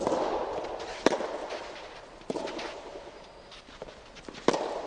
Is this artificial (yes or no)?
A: yes